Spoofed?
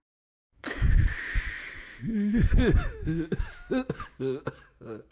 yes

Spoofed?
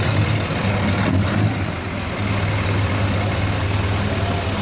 no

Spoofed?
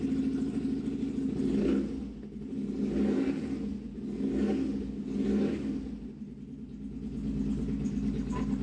no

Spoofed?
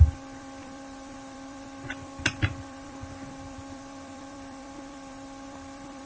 yes